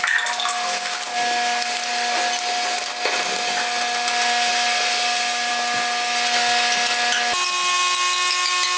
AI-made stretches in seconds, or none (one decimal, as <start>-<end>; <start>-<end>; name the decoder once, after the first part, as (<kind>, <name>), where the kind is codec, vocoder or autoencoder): none